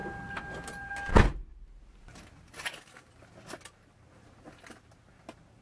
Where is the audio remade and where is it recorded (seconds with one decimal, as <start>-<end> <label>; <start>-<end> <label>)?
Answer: 0.0-0.9 remade; 0.9-5.6 recorded